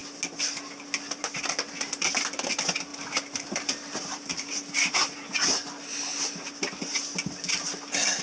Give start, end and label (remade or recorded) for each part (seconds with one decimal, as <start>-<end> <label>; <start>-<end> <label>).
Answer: 0.0-2.9 recorded; 2.9-4.5 remade; 4.5-8.2 recorded